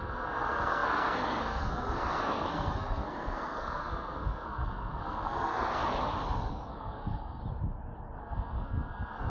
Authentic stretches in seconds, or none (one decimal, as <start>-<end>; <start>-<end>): 5.8-6.5; 7.4-8.2